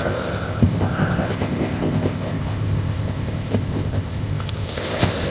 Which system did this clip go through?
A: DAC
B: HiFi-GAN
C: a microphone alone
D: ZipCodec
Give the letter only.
D